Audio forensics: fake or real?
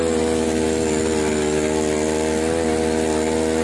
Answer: real